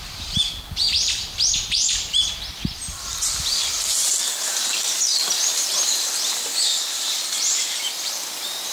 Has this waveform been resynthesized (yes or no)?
yes